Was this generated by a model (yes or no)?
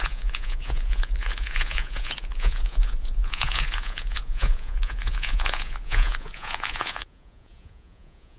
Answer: yes